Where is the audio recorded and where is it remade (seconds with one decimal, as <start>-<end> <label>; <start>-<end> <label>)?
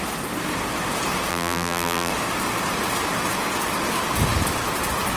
0.0-1.3 recorded; 1.3-2.1 remade; 2.1-5.2 recorded